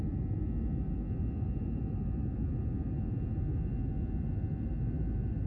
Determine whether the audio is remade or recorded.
recorded